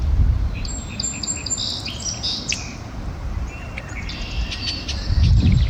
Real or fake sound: real